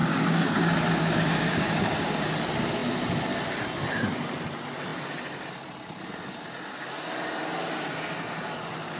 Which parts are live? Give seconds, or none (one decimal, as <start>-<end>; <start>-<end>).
2.3-9.0